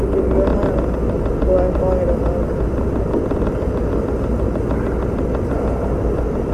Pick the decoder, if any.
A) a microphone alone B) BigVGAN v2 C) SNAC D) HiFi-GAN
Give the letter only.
A